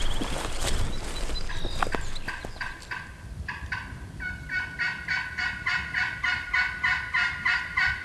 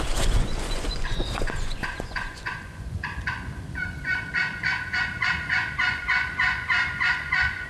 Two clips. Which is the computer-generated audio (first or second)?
second